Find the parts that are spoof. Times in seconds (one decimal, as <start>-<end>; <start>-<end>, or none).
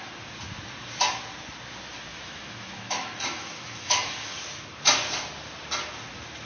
2.1-4.4